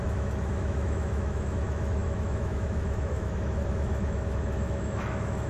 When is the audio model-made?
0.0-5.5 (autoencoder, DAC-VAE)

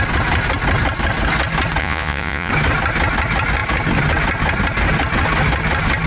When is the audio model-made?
1.8-2.5 (vocoder, Vocos)

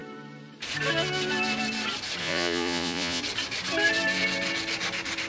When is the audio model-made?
2.2-3.2 (vocoder, Vocos)

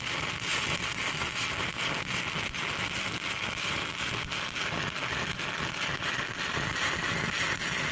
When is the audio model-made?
none

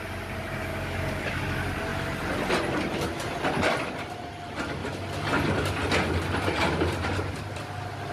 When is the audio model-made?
0.7-1.4 (codec, DAC)

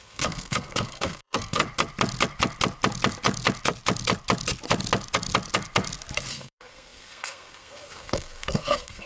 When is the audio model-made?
0.0-1.6 (codec, SNAC); 6.3-9.1

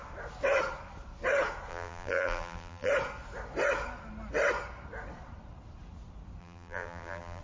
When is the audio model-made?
1.7-2.9 (vocoder, BigVGAN v2); 6.4-7.4